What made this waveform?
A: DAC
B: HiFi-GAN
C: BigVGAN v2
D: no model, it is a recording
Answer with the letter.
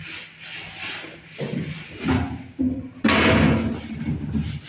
D